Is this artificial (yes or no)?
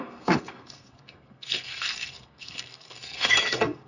yes